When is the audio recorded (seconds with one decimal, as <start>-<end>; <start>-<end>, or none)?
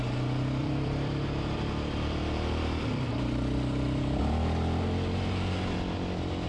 0.0-0.6; 4.2-6.5